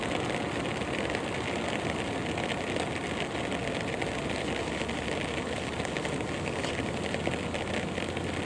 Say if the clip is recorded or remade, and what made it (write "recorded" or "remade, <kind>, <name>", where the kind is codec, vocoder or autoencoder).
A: recorded